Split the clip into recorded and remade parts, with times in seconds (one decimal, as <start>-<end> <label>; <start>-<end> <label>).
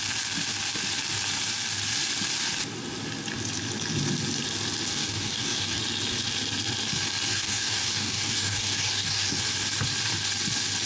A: 0.0-4.9 recorded; 4.9-5.8 remade; 5.8-7.3 recorded; 7.3-9.4 remade; 9.4-10.9 recorded